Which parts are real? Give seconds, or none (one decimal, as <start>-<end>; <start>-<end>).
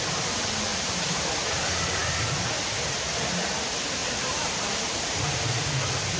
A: 0.0-0.7; 1.2-4.0; 5.7-6.2